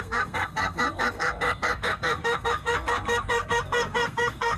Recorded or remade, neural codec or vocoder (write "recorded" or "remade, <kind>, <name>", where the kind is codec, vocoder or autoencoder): remade, codec, SNAC